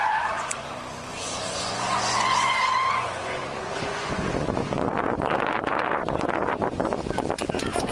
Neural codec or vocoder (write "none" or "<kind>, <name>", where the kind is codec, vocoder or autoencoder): vocoder, Vocos